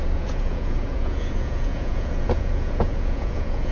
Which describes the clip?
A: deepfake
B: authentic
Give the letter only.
A